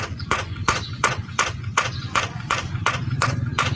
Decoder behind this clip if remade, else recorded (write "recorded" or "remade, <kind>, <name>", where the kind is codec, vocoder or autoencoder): remade, vocoder, Vocos